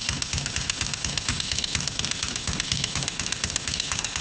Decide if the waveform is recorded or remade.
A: remade